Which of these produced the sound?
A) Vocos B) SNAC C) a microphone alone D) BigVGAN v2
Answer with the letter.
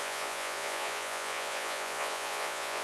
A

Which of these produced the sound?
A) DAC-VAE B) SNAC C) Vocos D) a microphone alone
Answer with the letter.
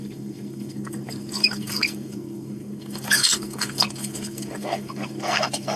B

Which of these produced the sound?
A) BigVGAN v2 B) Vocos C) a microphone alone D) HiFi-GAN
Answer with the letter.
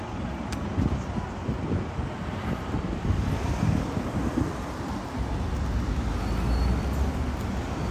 C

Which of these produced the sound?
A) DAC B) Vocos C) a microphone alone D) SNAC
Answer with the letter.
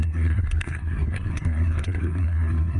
D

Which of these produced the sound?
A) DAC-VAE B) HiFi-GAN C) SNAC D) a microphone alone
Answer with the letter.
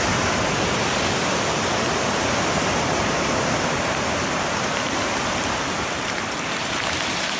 D